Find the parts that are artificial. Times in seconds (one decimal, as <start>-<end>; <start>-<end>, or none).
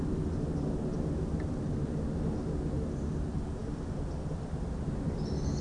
none